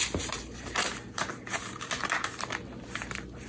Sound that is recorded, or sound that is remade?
remade